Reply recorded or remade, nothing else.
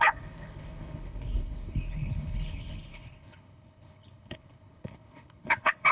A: remade